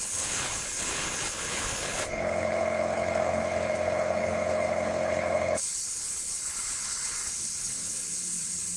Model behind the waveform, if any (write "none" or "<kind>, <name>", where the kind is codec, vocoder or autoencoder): codec, HILCodec